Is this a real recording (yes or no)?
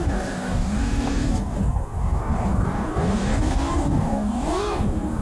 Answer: no